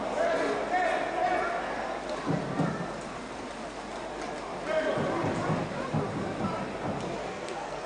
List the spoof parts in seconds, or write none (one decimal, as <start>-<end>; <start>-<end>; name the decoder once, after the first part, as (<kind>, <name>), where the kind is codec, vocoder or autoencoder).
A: 7.2-7.9 (codec, SNAC)